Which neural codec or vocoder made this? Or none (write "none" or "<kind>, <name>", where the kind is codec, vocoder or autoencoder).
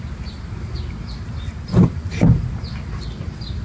none